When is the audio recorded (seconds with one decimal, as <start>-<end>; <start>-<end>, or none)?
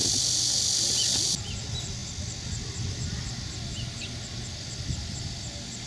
0.0-5.9